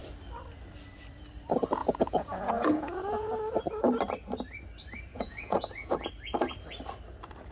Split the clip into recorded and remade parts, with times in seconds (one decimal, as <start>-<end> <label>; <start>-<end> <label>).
0.0-1.8 recorded; 1.8-3.3 remade; 3.3-5.1 recorded; 5.1-6.1 remade; 6.1-7.5 recorded